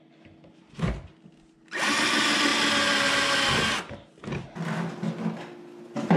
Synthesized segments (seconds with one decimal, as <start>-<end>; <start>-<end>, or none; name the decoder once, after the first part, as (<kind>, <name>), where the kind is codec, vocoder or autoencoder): 2.5-3.1 (vocoder, BigVGAN v2)